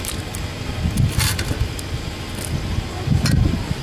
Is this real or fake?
real